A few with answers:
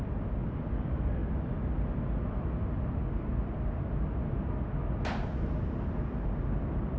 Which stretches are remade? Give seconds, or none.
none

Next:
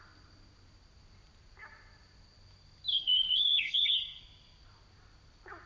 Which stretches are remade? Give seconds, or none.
2.9-4.2 (codec, SNAC)